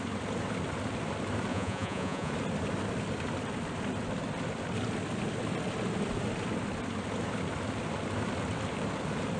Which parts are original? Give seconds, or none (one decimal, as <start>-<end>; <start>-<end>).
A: 0.0-1.5; 2.3-9.4